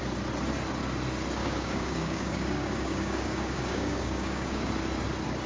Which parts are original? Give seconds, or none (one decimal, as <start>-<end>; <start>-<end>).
0.0-1.4; 4.7-5.5